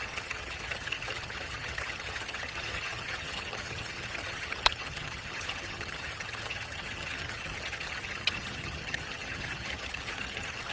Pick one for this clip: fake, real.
fake